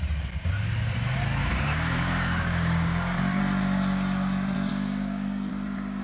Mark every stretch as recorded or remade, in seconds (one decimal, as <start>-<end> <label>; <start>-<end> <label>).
0.0-1.4 recorded; 1.4-3.4 remade; 3.4-4.7 recorded; 4.7-5.5 remade; 5.5-6.0 recorded